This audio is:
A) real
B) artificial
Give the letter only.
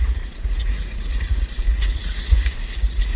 B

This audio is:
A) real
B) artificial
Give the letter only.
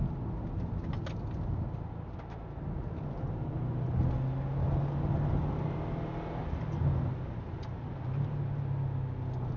A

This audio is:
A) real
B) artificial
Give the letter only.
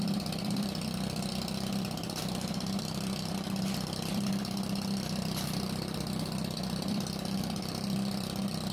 B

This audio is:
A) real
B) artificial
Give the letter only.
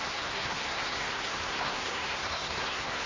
B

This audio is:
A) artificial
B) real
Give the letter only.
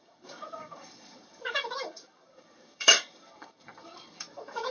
A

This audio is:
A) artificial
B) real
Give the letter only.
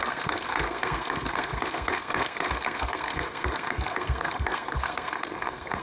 A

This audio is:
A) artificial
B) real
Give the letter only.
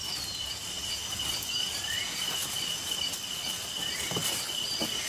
B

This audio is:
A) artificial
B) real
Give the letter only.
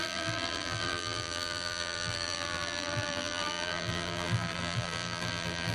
A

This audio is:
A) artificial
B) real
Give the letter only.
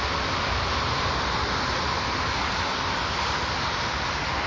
B